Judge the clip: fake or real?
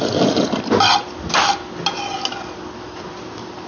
real